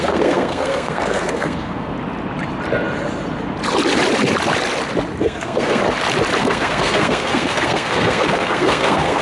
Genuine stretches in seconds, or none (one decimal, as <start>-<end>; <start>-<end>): 1.9-5.2; 5.8-6.4